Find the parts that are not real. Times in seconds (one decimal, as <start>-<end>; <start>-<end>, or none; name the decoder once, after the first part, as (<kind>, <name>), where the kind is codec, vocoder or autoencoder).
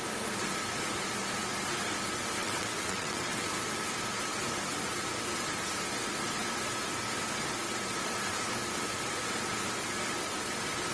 2.4-3.5 (vocoder, WaveNeXt)